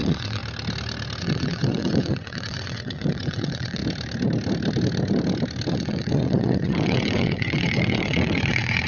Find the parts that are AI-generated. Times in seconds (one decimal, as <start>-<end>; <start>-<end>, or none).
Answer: 0.0-0.4; 1.2-3.8; 5.7-8.9